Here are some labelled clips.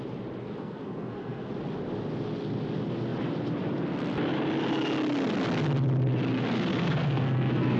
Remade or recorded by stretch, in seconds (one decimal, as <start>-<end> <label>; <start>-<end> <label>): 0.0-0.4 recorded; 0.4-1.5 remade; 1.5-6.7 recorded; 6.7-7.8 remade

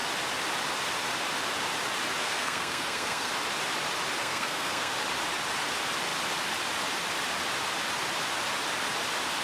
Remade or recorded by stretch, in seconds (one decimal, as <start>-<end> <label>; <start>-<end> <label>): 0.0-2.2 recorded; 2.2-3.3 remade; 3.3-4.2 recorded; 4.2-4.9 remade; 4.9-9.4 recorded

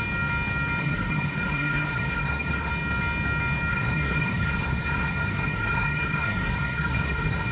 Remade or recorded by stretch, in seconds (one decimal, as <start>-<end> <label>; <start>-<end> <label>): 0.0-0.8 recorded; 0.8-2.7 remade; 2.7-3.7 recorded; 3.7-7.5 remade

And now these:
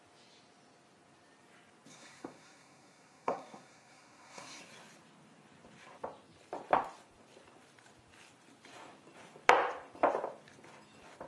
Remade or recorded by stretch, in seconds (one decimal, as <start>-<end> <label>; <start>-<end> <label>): 0.0-1.9 recorded; 1.9-4.6 remade; 4.6-11.3 recorded

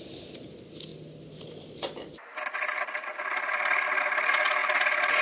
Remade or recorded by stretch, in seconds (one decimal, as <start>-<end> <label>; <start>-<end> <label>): 0.0-5.2 recorded

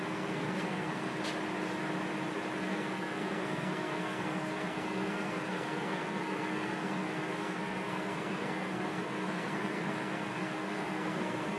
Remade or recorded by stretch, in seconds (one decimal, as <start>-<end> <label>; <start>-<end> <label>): 0.0-1.2 remade; 1.2-2.6 recorded; 2.6-11.6 remade